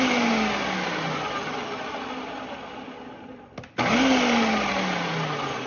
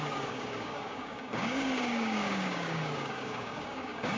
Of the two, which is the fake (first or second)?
second